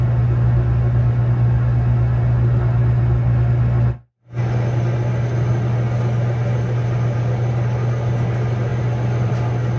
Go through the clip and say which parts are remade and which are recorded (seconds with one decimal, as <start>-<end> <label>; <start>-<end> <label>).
0.0-9.8 recorded